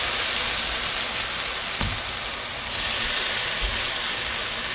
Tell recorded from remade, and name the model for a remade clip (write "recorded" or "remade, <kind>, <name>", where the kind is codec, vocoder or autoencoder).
recorded